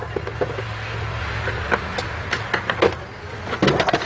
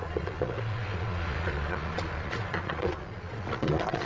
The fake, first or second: second